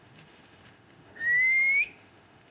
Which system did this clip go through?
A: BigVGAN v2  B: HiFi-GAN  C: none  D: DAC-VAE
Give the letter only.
D